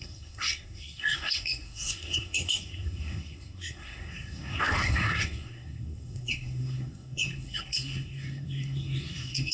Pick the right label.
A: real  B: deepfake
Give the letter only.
B